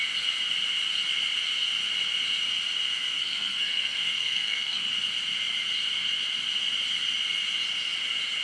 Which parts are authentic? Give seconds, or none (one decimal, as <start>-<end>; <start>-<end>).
0.0-3.2; 4.9-8.4